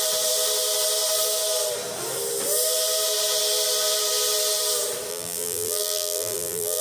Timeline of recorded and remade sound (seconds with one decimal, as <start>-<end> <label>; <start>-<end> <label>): 0.0-5.1 recorded; 5.1-6.8 remade